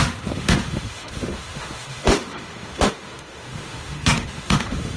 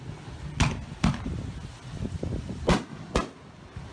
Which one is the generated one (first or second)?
first